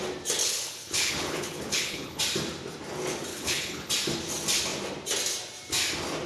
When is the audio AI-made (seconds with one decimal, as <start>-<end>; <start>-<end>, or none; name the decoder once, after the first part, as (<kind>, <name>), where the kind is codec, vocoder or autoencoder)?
0.4-2.2 (codec, HILCodec); 3.3-3.9